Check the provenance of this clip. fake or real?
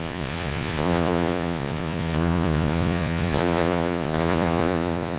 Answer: fake